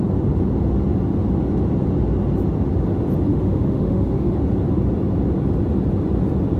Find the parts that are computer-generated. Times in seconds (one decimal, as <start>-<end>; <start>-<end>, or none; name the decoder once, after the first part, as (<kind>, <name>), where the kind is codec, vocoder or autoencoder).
3.3-4.3 (autoencoder, DAC-VAE)

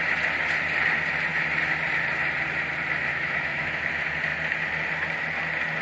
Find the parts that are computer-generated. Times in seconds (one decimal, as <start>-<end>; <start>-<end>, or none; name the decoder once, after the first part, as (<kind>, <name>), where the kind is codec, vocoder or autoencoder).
3.1-3.8 (autoencoder, DAC-VAE)

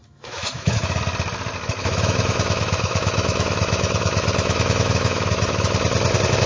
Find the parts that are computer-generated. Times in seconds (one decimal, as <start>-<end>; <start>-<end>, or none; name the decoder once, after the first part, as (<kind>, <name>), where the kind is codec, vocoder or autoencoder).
0.0-1.0 (autoencoder, DAC-VAE); 1.8-5.7

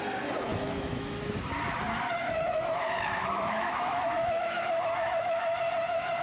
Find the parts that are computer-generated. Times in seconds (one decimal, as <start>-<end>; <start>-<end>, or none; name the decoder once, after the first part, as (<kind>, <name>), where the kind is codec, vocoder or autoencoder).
0.5-1.3 (autoencoder, DAC-VAE); 2.2-5.6

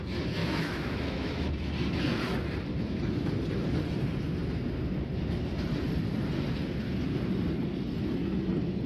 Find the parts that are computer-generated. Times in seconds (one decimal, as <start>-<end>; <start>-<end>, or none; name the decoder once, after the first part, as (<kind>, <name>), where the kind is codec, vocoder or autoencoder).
0.4-1.5 (autoencoder, DAC-VAE)

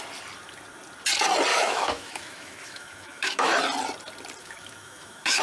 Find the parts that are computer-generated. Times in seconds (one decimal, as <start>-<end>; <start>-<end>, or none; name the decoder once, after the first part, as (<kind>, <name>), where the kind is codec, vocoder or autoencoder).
1.5-3.6 (autoencoder, DAC-VAE); 4.4-5.4